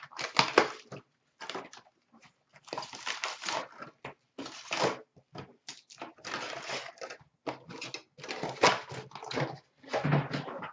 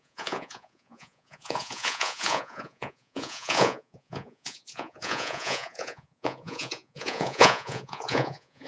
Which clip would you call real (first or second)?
first